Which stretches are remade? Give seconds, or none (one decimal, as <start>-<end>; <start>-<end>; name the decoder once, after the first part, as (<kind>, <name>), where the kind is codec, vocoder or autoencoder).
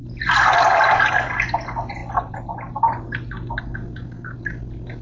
none